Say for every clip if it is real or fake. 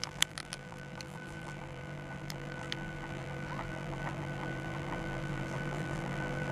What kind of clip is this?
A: fake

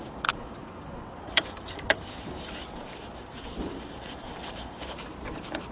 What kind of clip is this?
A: fake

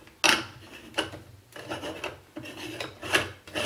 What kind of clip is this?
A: real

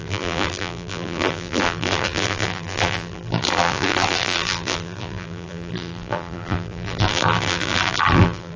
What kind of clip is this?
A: fake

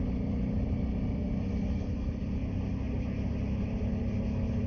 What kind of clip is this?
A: real